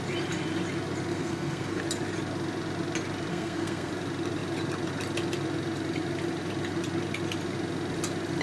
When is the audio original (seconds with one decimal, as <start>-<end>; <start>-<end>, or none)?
0.0-1.1; 1.8-3.3; 3.9-8.4